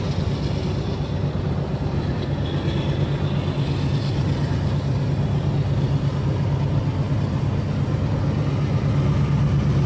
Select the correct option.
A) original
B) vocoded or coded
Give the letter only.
A